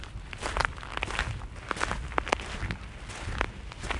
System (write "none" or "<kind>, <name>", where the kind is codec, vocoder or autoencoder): none